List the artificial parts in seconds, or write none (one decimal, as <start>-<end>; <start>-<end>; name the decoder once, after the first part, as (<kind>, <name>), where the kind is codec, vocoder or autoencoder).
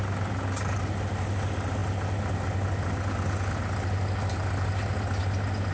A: none